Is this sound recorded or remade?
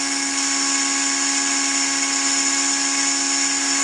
recorded